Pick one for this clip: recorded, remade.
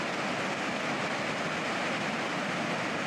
recorded